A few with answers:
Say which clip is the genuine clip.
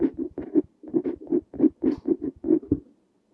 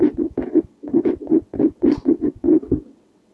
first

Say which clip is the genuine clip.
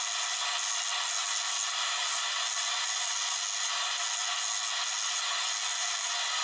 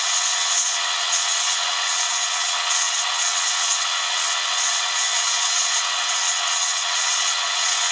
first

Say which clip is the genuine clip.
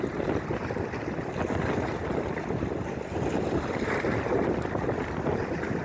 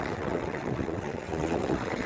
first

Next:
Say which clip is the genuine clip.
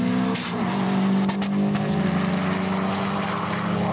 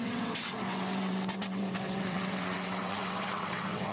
first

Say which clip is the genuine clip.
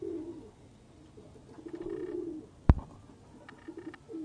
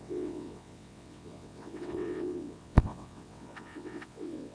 first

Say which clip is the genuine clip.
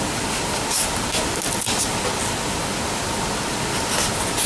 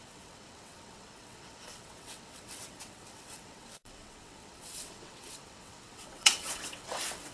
first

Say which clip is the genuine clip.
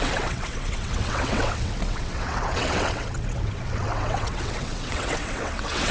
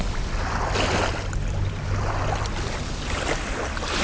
second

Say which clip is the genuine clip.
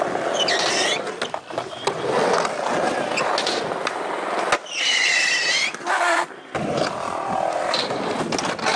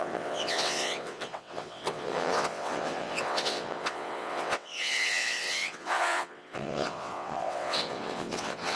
first